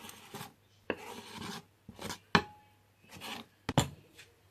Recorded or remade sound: recorded